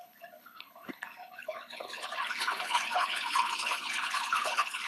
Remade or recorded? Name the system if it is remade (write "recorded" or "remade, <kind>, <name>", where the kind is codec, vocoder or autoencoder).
remade, codec, HILCodec